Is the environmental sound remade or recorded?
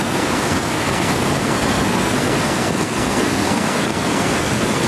remade